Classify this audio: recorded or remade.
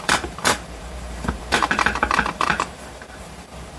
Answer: remade